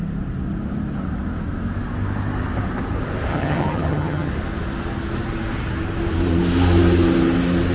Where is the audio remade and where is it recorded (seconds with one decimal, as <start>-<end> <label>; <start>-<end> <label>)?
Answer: 0.0-3.3 recorded; 3.3-4.3 remade; 4.3-7.7 recorded